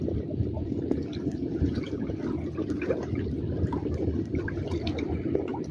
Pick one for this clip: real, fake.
real